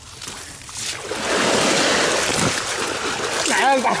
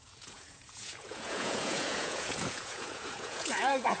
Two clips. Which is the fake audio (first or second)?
second